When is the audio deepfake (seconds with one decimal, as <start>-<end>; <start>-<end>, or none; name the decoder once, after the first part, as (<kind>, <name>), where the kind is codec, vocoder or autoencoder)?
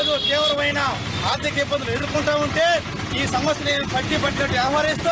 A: none